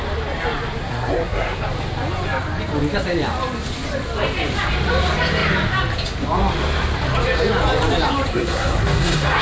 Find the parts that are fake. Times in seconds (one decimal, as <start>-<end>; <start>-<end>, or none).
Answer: 0.8-1.6; 8.3-9.4